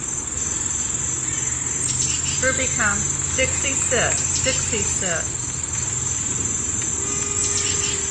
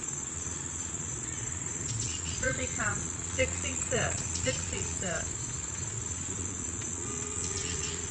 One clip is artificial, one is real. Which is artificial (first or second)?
second